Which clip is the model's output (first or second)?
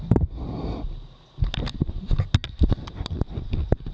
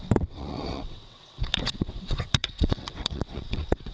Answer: second